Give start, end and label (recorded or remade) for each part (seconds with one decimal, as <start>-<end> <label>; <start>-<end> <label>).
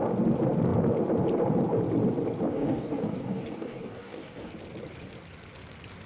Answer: 0.0-2.5 recorded; 2.5-4.5 remade; 4.5-6.1 recorded